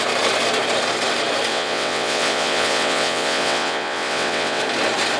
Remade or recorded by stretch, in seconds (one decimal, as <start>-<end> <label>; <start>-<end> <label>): 0.0-1.5 recorded; 1.5-4.6 remade; 4.6-5.2 recorded

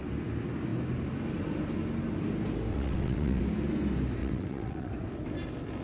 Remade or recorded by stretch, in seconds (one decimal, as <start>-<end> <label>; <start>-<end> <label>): 0.0-2.7 recorded; 2.7-3.4 remade; 3.4-4.2 recorded; 4.2-4.9 remade; 4.9-5.8 recorded

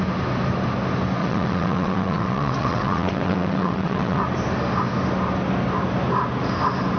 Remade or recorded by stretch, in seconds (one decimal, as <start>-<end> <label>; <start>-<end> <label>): 0.0-1.2 recorded; 1.2-4.2 remade; 4.2-7.0 recorded

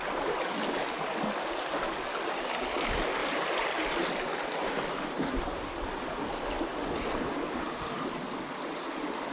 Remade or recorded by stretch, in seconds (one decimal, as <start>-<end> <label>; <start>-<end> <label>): 0.0-9.3 recorded